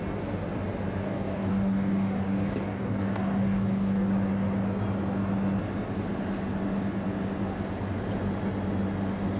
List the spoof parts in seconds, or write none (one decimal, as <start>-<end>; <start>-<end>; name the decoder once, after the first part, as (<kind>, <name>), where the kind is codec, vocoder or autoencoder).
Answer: 1.0-4.1 (codec, DAC)

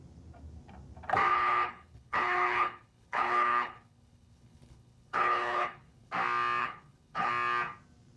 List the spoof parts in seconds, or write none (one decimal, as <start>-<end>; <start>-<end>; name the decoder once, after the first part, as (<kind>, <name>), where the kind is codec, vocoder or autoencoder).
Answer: 1.3-6.1 (codec, HILCodec); 6.6-7.3

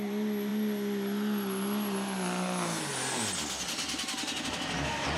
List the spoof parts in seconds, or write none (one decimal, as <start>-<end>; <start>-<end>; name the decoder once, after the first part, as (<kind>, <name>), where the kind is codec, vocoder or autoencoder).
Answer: none